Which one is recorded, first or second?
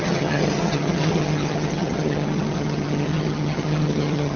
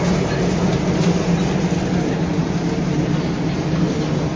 second